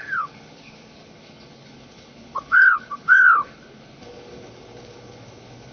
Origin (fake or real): fake